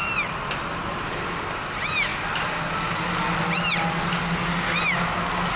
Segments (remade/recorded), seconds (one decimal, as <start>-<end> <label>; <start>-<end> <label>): 0.0-5.6 recorded